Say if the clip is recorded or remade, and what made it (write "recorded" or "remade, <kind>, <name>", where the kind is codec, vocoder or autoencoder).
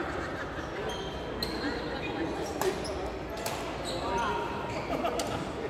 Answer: recorded